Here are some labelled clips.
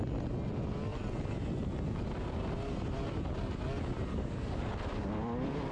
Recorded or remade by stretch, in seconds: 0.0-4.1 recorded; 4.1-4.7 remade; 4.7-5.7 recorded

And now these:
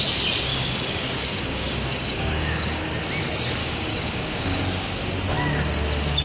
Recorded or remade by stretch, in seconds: 0.0-0.5 recorded; 0.5-2.8 remade; 2.8-3.6 recorded; 3.6-4.6 remade; 4.6-6.2 recorded

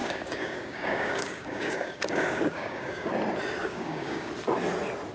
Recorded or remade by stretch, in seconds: 0.0-3.1 remade; 3.1-3.6 recorded; 3.6-4.3 remade; 4.3-5.1 recorded

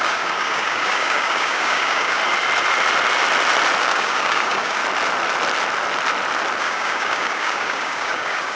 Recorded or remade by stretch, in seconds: 0.0-2.2 remade; 2.2-3.8 recorded; 3.8-4.8 remade; 4.8-6.6 recorded; 6.6-8.6 remade

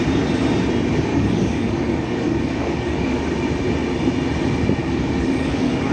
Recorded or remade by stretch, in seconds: 0.0-1.1 recorded; 1.1-3.2 remade; 3.2-4.8 recorded; 4.8-5.9 remade

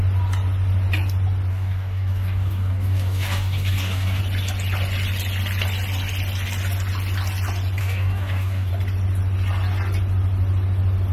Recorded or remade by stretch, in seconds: 0.0-1.5 recorded; 1.5-4.2 remade; 4.2-7.8 recorded; 7.8-8.7 remade; 8.7-11.1 recorded

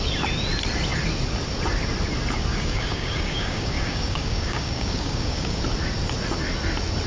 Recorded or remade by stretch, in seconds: 0.0-2.5 recorded; 2.5-5.6 remade; 5.6-7.1 recorded

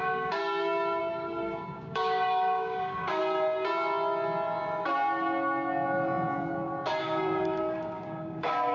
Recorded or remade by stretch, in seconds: 0.0-0.4 remade; 0.4-1.0 recorded; 1.0-3.2 remade; 3.2-7.0 recorded; 7.0-8.7 remade